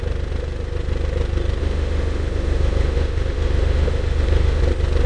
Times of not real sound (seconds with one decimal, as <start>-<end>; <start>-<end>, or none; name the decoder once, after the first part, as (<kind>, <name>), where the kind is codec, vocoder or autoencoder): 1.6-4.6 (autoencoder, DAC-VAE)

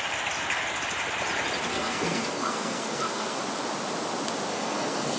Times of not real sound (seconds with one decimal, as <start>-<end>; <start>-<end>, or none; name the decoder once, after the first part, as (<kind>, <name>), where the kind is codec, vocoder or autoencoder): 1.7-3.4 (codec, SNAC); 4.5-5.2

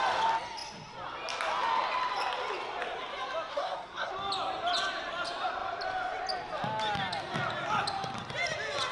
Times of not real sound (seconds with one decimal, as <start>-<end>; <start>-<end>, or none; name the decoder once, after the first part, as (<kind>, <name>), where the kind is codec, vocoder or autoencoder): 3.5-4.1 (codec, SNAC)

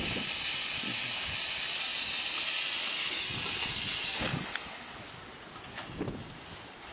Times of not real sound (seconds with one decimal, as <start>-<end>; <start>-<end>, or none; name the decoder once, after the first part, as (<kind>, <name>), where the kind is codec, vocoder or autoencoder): none

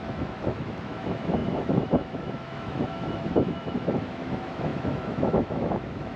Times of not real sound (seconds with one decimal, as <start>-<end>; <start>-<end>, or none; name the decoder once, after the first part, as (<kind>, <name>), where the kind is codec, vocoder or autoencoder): 0.0-6.2 (autoencoder, DAC-VAE)

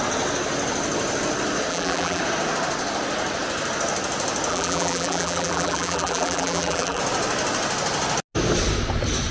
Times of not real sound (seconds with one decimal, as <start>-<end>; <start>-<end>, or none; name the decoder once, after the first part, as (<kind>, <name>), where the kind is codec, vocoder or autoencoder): 1.7-2.2 (vocoder, BigVGAN v2); 4.5-7.0